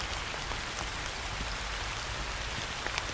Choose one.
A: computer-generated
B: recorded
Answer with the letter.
B